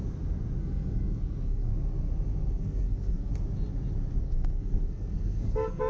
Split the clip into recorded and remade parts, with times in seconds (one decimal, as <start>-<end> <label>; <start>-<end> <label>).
0.0-0.6 recorded; 0.6-1.7 remade; 1.7-2.5 recorded; 2.5-3.3 remade; 3.3-4.2 recorded; 4.2-5.9 remade